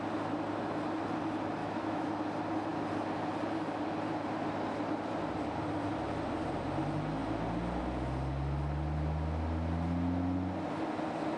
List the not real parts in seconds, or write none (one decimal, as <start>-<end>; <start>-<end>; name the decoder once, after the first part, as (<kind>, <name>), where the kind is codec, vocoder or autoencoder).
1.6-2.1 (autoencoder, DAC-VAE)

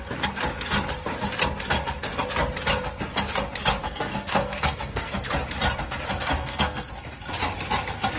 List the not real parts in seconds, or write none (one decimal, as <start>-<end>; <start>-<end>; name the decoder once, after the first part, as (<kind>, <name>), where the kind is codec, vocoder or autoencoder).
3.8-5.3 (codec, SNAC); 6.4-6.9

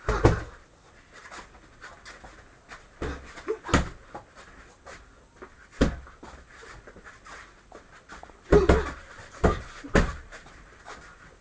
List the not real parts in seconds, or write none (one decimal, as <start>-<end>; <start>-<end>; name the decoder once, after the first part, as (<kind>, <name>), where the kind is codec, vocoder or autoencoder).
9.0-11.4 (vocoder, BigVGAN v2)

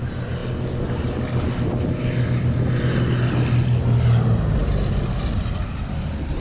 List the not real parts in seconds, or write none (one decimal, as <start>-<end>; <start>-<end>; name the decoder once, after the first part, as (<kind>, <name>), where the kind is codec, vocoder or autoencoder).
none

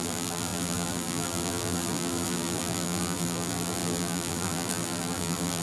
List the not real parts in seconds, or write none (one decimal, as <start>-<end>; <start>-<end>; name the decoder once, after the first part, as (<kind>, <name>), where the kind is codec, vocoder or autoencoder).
0.0-5.6 (vocoder, BigVGAN v2)

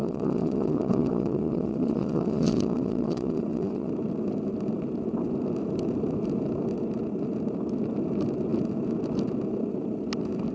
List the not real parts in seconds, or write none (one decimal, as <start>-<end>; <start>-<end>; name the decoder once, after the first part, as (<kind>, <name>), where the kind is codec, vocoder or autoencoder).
0.0-3.9 (vocoder, Vocos)

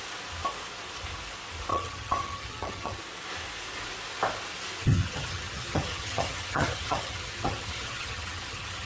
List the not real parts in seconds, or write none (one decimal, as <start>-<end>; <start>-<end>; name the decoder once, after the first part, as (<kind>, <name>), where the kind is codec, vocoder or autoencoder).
1.7-3.0 (vocoder, HiFi-GAN); 4.8-8.9